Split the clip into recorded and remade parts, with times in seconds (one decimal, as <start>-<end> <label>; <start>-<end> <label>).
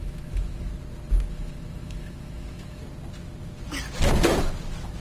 0.0-0.7 remade; 0.7-1.3 recorded; 1.3-2.8 remade; 2.8-5.0 recorded